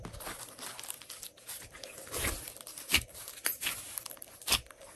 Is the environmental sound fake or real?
real